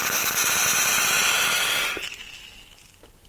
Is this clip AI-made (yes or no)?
no